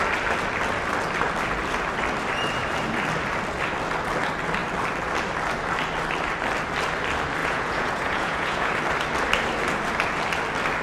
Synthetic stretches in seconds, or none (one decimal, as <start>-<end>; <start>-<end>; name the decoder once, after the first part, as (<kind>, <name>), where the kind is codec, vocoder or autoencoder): 7.4-8.7 (vocoder, Vocos)